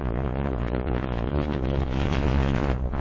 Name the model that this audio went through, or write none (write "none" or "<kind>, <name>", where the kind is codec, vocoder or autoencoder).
vocoder, Vocos